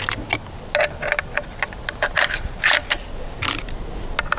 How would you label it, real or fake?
real